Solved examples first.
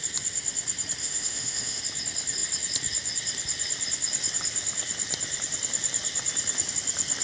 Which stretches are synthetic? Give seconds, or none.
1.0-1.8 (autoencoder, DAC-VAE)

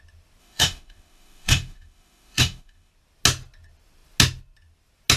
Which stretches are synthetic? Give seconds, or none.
0.4-2.9 (autoencoder, DAC-VAE)

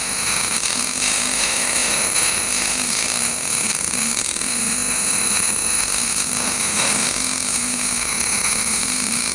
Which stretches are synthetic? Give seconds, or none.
0.0-9.3 (autoencoder, DAC-VAE)

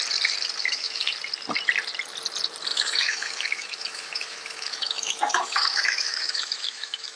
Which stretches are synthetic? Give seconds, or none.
0.6-1.1 (autoencoder, DAC-VAE); 2.7-7.2

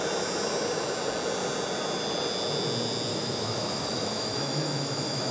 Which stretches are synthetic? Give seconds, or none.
3.1-5.3 (autoencoder, DAC-VAE)

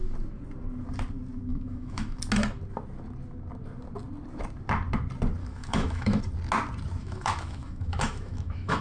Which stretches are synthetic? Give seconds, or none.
1.5-2.2 (autoencoder, DAC-VAE); 5.4-6.2; 7.0-8.8

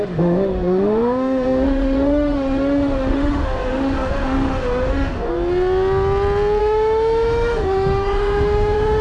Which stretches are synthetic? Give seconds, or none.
0.0-5.3 (autoencoder, DAC-VAE); 6.6-9.0